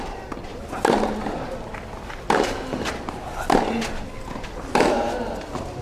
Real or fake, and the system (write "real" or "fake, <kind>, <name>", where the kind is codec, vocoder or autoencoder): real